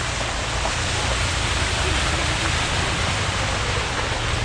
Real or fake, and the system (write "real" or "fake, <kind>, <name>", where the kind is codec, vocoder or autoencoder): real